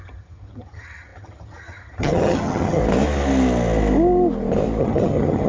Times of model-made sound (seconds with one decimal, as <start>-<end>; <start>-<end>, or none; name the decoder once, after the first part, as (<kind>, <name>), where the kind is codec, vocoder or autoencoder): 0.0-2.8 (vocoder, HiFi-GAN); 4.8-5.5